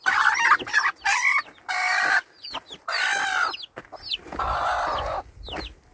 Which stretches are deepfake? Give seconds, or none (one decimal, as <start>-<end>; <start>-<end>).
none